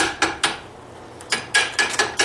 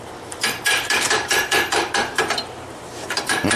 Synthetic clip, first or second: second